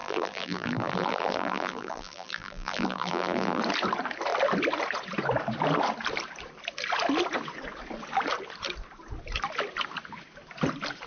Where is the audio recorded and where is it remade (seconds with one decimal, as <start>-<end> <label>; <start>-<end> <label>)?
0.0-3.6 remade; 3.6-11.1 recorded